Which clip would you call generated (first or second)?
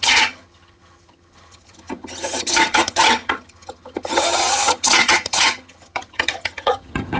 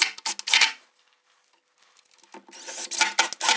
first